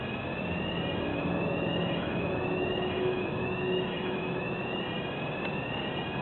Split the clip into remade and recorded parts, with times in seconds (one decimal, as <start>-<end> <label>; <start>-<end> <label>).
0.0-1.1 recorded; 1.1-4.8 remade; 4.8-6.2 recorded